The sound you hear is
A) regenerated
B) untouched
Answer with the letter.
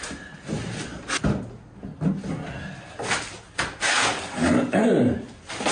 B